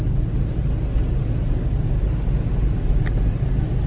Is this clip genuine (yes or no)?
yes